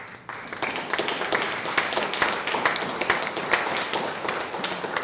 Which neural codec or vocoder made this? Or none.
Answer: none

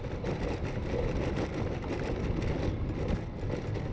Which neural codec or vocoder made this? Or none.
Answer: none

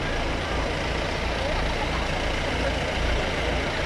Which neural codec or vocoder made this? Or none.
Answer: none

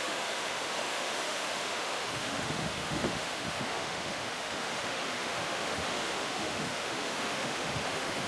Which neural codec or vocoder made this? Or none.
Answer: autoencoder, DAC-VAE